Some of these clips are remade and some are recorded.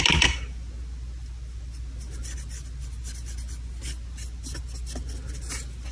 recorded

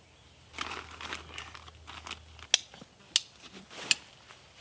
recorded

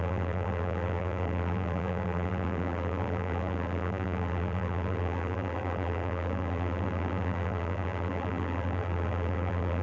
remade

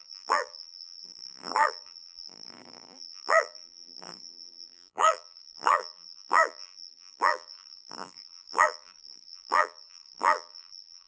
remade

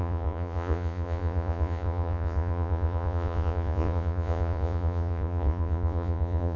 remade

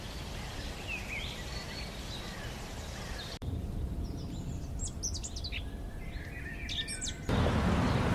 recorded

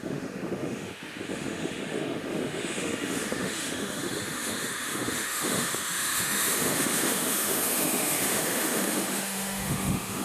remade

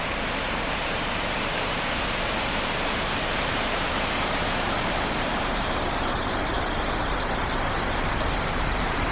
remade